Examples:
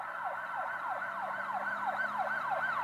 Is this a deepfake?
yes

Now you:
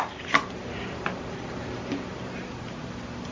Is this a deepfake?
yes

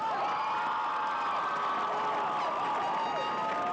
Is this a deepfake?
no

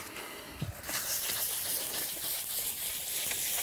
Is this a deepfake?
yes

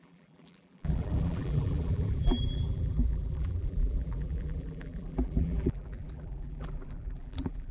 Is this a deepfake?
yes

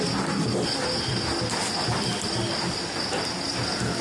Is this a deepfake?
no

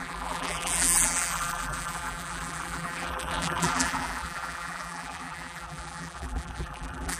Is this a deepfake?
yes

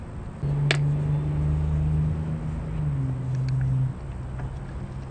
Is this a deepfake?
no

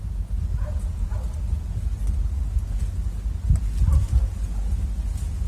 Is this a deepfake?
no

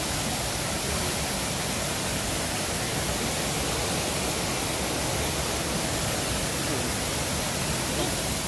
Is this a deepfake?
no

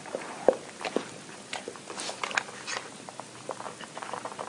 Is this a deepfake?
yes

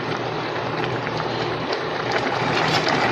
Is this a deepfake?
yes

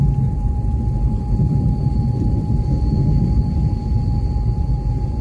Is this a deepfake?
yes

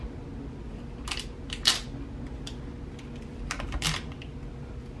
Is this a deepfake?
no